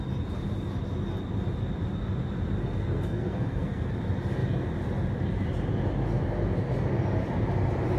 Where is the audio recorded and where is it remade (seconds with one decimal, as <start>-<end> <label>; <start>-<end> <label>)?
0.0-2.6 recorded; 2.6-4.0 remade; 4.0-8.0 recorded